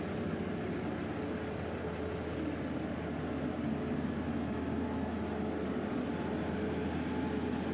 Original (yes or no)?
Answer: yes